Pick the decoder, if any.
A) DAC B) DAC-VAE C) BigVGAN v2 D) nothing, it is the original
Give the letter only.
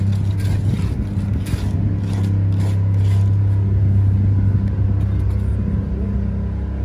D